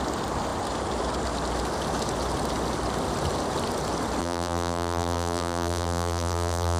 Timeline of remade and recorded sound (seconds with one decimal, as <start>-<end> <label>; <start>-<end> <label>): 0.0-4.2 recorded; 4.2-6.8 remade